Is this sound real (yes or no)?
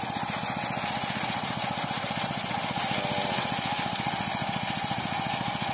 yes